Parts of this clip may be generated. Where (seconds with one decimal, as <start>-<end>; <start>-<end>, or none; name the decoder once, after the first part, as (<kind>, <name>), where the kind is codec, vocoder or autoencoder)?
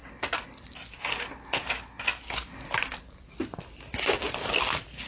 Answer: none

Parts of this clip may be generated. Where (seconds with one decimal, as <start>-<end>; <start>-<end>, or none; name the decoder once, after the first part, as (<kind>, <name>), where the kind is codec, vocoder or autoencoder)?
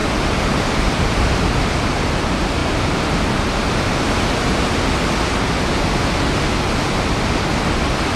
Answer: none